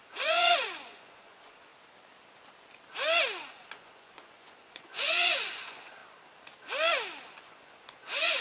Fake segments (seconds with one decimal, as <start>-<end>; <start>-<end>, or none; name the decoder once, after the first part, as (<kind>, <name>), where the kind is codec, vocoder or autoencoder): 0.0-1.7 (vocoder, Vocos); 3.5-6.0; 7.4-8.4

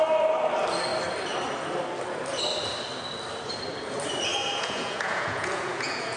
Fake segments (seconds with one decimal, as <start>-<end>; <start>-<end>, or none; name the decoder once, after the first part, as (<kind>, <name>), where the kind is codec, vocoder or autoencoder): 4.3-6.2 (vocoder, Vocos)

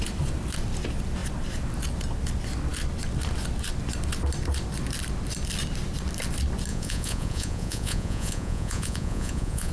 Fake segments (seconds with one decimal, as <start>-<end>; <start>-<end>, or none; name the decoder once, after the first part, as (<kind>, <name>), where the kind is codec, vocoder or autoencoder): 6.7-9.7 (vocoder, Vocos)

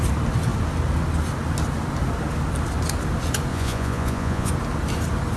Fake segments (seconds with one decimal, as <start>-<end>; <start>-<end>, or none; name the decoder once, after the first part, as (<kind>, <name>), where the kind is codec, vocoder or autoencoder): 3.5-4.5 (vocoder, Vocos)